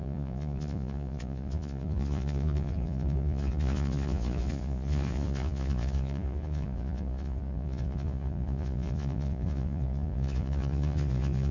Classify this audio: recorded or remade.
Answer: remade